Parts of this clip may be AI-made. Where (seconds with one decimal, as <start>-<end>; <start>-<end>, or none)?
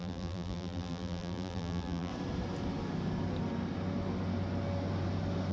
0.0-2.1